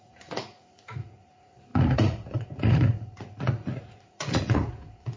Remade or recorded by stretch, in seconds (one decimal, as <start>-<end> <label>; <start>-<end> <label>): 0.0-5.2 remade